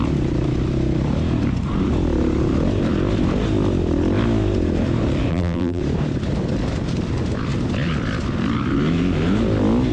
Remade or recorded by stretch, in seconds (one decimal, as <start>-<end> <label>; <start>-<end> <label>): 0.0-5.3 recorded; 5.3-5.8 remade; 5.8-9.9 recorded